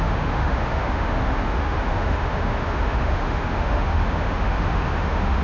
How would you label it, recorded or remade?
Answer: remade